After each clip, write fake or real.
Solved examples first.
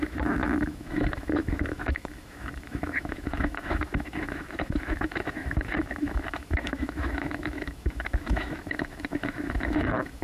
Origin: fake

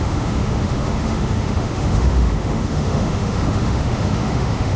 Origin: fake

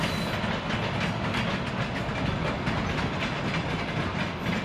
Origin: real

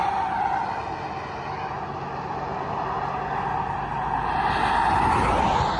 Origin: real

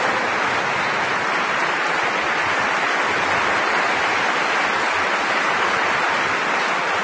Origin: real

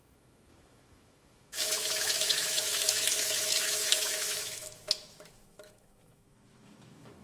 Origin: fake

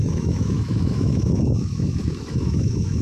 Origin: fake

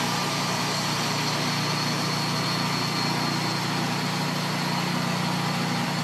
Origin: real